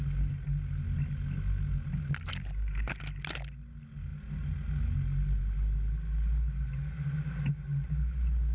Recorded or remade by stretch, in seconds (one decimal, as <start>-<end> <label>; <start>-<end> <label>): 0.0-8.5 recorded